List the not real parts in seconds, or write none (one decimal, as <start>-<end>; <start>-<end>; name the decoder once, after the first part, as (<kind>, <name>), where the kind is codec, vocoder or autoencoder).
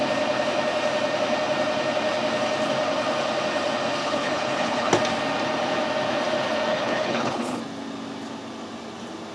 4.0-4.9 (codec, HILCodec); 6.7-7.6